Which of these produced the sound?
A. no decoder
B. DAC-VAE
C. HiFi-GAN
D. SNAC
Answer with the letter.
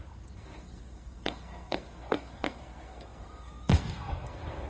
D